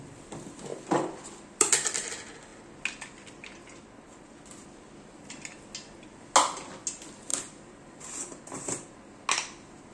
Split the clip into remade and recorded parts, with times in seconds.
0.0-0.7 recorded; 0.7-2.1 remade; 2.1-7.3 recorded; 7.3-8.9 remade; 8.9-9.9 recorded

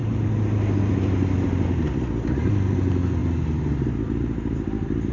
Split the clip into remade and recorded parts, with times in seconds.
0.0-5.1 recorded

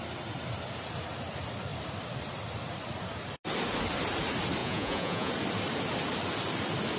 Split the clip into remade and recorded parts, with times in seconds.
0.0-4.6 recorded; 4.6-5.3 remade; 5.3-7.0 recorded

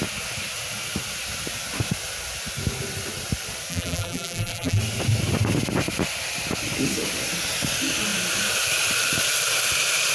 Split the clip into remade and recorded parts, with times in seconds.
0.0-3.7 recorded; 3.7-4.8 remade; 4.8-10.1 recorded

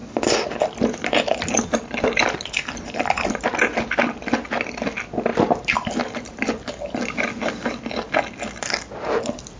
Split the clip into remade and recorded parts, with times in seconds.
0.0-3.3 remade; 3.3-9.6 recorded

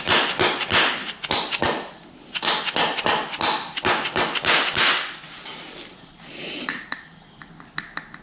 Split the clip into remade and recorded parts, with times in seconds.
0.0-8.2 recorded

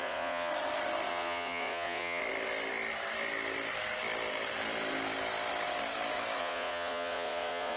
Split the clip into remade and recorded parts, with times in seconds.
0.0-0.5 remade; 0.5-1.1 recorded; 1.1-2.2 remade; 2.2-6.4 recorded; 6.4-7.8 remade

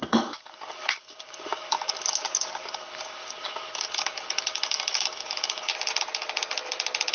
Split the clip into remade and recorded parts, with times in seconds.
0.0-5.7 remade; 5.7-7.1 recorded